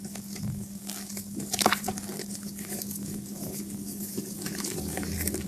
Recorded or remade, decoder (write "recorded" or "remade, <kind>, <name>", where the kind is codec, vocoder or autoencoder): remade, codec, DAC